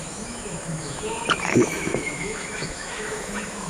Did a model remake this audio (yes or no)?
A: yes